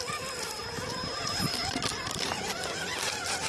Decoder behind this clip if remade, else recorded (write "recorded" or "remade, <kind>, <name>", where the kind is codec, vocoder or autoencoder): recorded